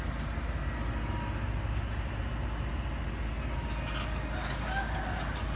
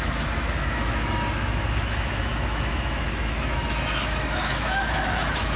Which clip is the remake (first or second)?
second